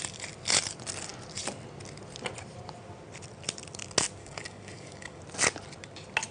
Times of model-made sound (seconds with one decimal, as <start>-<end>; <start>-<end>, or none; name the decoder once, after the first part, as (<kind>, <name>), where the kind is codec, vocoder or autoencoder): 4.2-5.2 (codec, DAC)